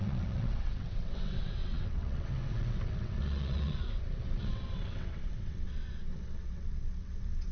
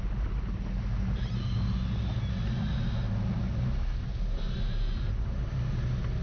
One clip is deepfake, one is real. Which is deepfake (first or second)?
first